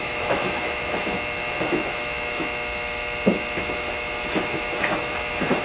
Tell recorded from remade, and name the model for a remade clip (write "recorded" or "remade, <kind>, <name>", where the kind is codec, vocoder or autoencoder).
remade, autoencoder, DAC-VAE